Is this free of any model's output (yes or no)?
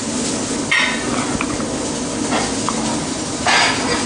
yes